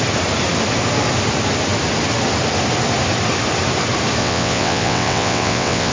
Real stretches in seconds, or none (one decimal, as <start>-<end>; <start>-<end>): 0.0-4.2